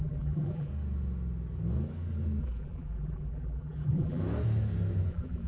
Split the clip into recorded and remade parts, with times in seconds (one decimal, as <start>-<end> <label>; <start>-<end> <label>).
0.0-0.7 remade; 0.7-2.4 recorded; 2.4-4.2 remade; 4.2-5.1 recorded; 5.1-5.5 remade